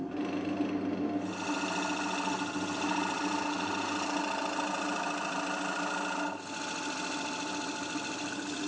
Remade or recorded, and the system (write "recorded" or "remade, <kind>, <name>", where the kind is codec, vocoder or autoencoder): recorded